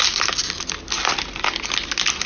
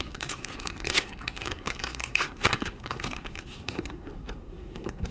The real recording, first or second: first